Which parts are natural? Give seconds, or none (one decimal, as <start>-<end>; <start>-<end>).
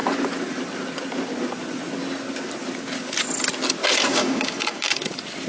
0.0-4.1; 5.0-5.5